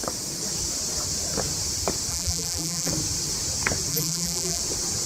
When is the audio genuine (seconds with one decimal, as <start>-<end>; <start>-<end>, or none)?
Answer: 0.0-2.1; 2.9-3.9; 4.6-5.1